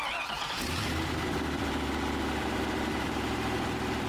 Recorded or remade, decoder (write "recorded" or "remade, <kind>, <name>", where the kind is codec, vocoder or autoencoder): recorded